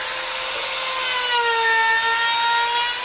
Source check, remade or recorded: recorded